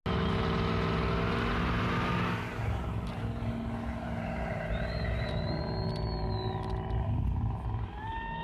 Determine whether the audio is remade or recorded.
recorded